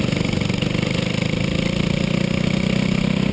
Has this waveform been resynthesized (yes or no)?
no